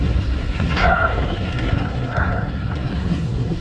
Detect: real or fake fake